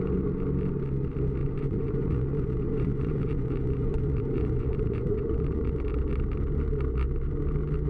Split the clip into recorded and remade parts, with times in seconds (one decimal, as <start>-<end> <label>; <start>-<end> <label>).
0.0-1.4 recorded; 1.4-5.7 remade; 5.7-7.9 recorded